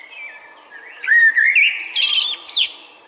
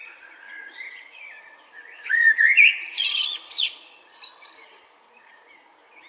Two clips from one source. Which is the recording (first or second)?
first